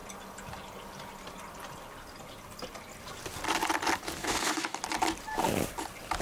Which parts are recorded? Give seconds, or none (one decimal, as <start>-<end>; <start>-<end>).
0.0-4.2; 4.8-6.2